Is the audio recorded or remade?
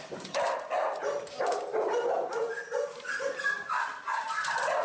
recorded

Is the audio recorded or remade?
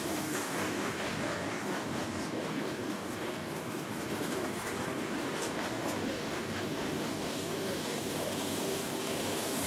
remade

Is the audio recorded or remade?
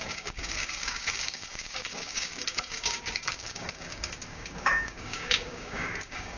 remade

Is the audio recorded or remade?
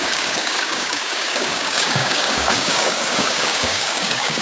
remade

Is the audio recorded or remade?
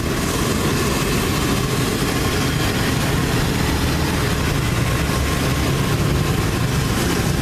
recorded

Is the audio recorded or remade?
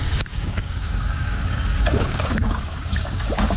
remade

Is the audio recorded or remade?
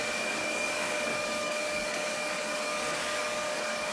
remade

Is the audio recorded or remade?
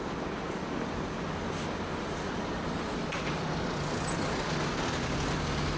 recorded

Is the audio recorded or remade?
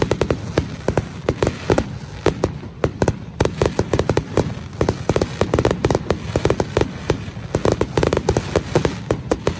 recorded